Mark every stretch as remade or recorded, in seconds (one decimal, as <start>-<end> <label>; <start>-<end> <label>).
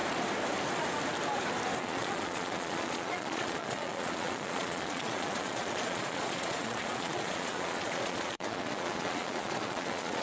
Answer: 0.0-1.8 recorded; 1.8-10.2 remade